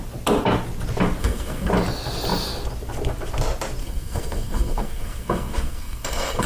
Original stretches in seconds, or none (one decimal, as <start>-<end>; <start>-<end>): 0.0-1.2; 1.7-3.8